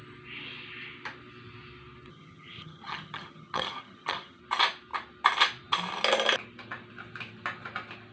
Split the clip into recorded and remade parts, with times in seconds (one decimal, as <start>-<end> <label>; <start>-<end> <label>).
0.0-2.1 recorded; 2.1-4.4 remade; 4.4-8.1 recorded